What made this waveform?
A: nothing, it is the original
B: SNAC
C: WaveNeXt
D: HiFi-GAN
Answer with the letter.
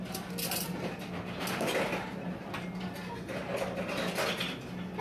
A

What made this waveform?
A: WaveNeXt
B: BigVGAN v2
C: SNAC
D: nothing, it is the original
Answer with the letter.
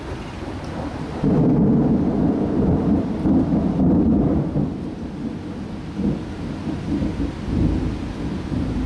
D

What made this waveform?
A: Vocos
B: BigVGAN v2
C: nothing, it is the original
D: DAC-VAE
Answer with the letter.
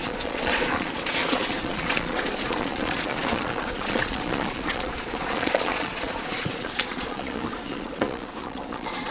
A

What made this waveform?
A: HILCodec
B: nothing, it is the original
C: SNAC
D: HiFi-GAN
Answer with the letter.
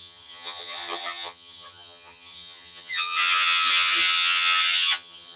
D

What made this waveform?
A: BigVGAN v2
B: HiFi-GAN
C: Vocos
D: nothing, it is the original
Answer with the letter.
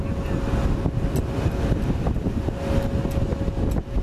D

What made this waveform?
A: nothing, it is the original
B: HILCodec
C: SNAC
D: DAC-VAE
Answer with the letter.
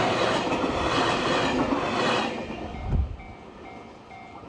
A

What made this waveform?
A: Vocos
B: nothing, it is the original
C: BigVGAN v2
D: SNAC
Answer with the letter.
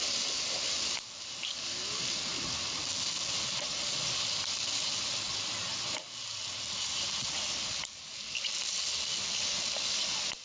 B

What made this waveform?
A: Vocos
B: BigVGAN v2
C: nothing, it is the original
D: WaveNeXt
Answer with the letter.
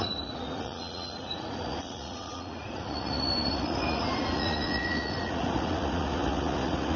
A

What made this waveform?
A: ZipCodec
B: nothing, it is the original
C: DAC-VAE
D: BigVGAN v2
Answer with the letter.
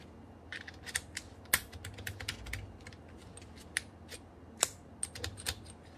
B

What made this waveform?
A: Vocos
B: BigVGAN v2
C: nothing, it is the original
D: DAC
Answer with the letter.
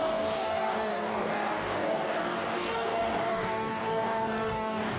D